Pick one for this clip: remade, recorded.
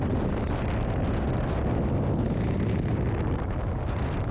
recorded